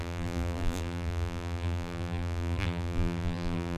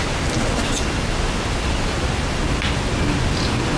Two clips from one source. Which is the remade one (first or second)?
first